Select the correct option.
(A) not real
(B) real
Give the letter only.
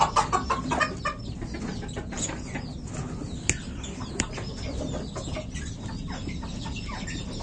B